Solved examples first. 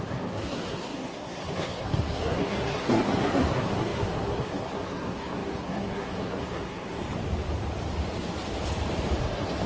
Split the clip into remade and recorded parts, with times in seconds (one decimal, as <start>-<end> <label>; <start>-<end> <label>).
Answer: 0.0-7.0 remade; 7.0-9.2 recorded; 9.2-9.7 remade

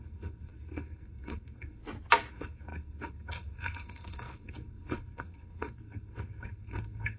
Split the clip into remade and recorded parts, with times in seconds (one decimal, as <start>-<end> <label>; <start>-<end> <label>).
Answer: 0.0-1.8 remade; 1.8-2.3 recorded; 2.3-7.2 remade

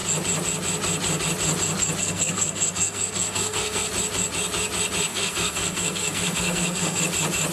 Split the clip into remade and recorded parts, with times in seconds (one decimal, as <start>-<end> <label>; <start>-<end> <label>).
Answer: 0.0-2.0 recorded; 2.0-3.9 remade; 3.9-5.1 recorded; 5.1-7.0 remade; 7.0-7.5 recorded

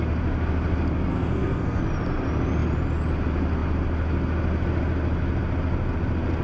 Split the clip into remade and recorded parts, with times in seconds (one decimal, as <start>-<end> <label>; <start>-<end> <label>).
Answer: 0.0-1.1 recorded; 1.1-1.8 remade; 1.8-6.4 recorded

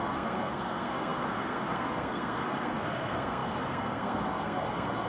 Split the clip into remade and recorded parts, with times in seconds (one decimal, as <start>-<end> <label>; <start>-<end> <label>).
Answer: 0.0-5.1 remade

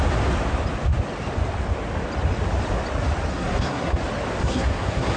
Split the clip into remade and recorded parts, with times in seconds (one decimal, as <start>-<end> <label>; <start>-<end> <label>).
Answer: 0.0-3.3 recorded; 3.3-4.0 remade; 4.0-4.4 recorded; 4.4-5.2 remade